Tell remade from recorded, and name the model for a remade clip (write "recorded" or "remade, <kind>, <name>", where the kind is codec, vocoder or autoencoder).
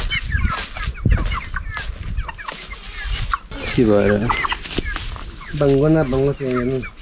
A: recorded